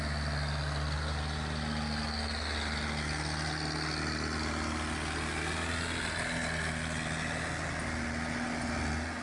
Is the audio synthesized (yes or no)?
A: no